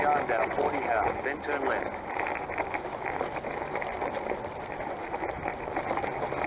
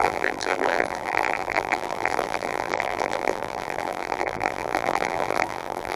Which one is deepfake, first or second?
second